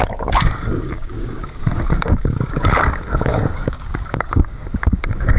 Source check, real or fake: fake